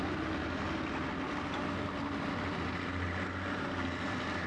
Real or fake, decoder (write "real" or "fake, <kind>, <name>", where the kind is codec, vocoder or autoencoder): real